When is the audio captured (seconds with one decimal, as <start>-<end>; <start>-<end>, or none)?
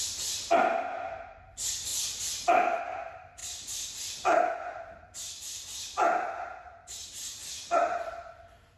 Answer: 0.0-3.4; 4.5-7.4; 8.3-8.8